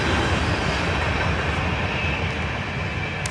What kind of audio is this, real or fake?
real